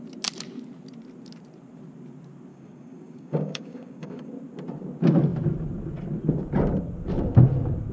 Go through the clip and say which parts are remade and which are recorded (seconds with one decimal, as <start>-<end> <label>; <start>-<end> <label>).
0.0-2.5 recorded; 2.5-4.3 remade; 4.3-7.9 recorded